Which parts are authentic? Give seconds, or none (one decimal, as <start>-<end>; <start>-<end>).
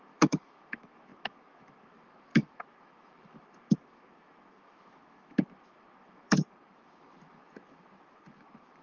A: none